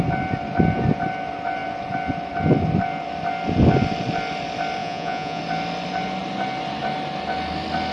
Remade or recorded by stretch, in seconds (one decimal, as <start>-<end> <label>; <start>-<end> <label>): 0.0-4.8 recorded; 4.8-5.4 remade; 5.4-7.9 recorded